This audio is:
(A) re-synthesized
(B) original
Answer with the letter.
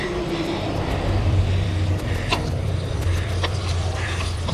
A